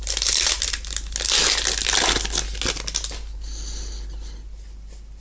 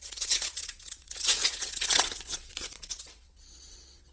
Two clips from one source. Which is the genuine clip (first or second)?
first